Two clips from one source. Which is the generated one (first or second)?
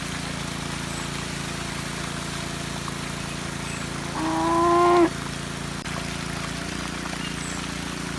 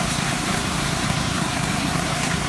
second